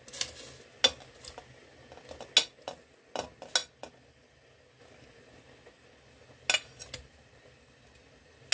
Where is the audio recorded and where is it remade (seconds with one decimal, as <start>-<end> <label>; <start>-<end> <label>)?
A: 0.0-3.6 recorded; 3.6-4.8 remade; 4.8-8.5 recorded